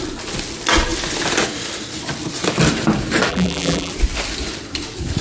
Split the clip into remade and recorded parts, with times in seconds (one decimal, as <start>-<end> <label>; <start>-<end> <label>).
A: 0.0-3.3 recorded; 3.3-3.9 remade; 3.9-5.2 recorded